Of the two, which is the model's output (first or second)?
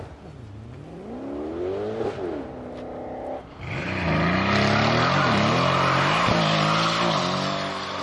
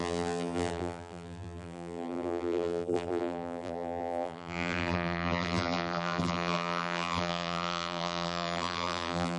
second